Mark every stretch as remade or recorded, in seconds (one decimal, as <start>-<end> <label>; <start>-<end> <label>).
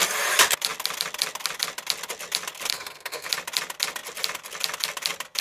0.0-2.7 recorded; 2.7-3.3 remade; 3.3-5.4 recorded